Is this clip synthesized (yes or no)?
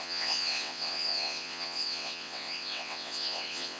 yes